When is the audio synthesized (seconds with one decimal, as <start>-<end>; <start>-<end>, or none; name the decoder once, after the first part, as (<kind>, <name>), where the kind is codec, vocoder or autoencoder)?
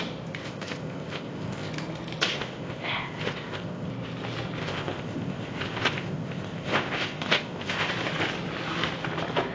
0.4-1.7 (codec, ZipCodec); 2.3-3.9; 4.6-7.9